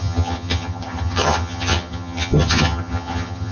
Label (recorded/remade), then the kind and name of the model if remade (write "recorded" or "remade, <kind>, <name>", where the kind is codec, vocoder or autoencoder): remade, vocoder, HiFi-GAN